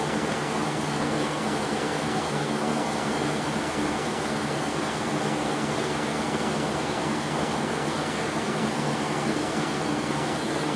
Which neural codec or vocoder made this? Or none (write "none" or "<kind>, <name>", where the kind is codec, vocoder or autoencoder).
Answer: codec, SNAC